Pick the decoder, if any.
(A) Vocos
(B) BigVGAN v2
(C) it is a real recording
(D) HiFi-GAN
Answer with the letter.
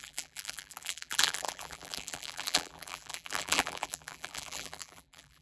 B